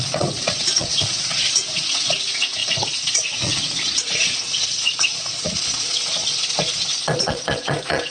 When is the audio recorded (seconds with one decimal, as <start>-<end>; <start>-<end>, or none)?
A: none